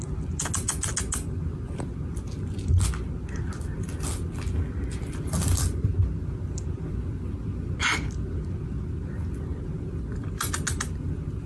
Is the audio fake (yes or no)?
no